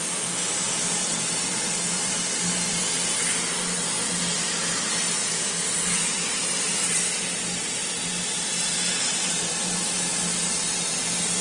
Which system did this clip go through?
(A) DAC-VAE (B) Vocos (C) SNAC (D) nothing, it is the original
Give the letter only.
D